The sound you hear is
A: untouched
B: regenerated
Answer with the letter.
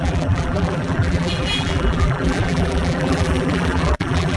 B